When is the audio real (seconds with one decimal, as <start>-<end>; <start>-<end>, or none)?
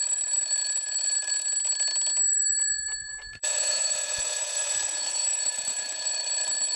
0.0-0.6; 1.6-2.2; 6.1-6.8